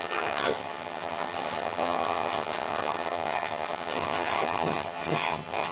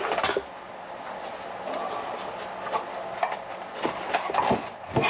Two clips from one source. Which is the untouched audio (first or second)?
second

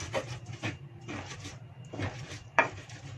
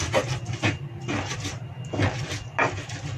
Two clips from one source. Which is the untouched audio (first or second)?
second